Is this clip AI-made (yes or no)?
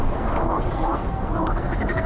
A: yes